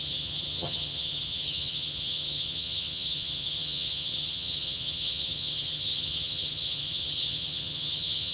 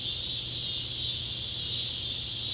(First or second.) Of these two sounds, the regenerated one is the first